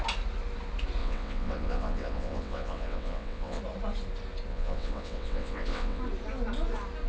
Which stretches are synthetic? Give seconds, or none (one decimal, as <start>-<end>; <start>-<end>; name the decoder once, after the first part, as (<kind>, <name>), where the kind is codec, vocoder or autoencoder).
1.0-3.6 (vocoder, WaveNeXt); 4.5-6.0